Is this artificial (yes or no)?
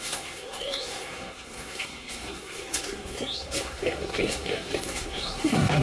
yes